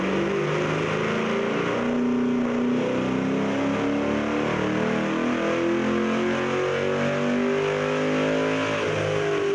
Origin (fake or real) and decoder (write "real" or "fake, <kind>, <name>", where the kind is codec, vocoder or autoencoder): real